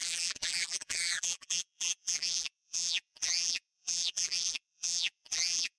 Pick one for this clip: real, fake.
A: fake